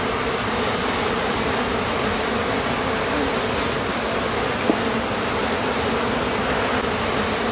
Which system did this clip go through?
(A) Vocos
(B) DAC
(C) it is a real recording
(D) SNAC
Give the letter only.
C